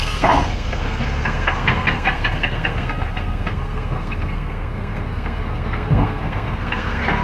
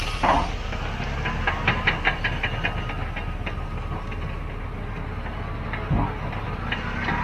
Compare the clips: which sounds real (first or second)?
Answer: second